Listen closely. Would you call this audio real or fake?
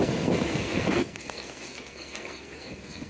fake